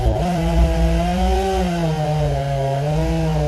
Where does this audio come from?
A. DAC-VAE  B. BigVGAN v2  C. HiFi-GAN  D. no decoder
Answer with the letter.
B